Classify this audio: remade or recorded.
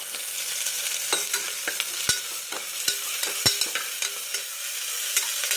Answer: recorded